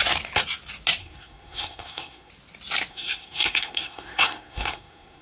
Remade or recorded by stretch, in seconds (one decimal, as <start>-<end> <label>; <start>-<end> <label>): 0.0-1.0 recorded; 1.0-2.3 remade; 2.3-2.9 recorded; 2.9-5.2 remade